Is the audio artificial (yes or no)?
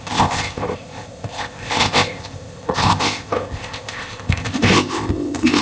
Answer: yes